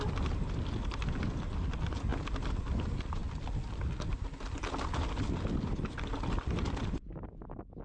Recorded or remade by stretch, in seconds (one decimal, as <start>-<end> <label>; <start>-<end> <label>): 0.0-7.8 recorded